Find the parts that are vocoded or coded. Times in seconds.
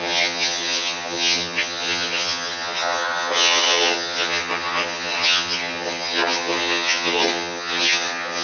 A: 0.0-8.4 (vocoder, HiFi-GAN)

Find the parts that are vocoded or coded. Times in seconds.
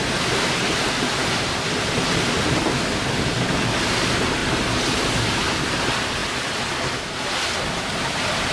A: none